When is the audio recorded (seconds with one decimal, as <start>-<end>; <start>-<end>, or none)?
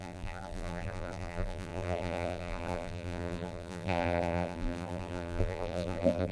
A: none